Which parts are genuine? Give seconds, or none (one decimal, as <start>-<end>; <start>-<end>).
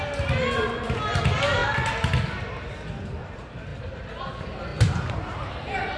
0.0-6.0